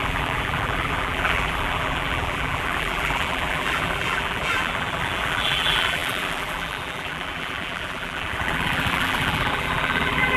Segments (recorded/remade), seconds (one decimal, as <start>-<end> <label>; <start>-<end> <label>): 0.0-10.4 remade